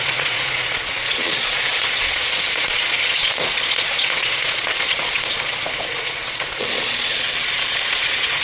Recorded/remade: remade